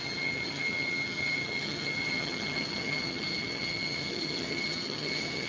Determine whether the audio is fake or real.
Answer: fake